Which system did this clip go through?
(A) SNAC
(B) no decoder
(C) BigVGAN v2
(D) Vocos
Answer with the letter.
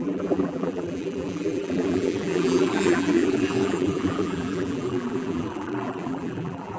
C